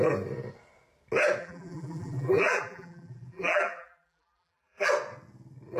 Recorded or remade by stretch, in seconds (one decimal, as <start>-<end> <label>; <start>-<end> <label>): 0.0-1.4 recorded; 1.4-4.9 remade; 4.9-5.8 recorded